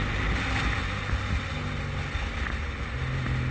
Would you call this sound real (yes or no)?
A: yes